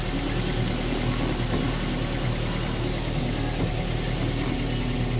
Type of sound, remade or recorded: recorded